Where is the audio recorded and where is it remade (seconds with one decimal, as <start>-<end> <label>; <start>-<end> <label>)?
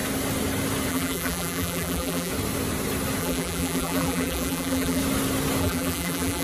0.0-0.9 recorded; 0.9-2.3 remade; 2.3-3.2 recorded; 3.2-5.0 remade; 5.0-5.6 recorded; 5.6-6.4 remade